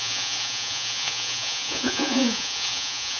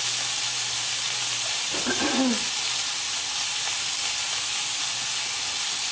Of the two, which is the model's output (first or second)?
first